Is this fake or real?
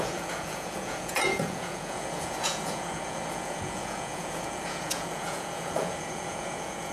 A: fake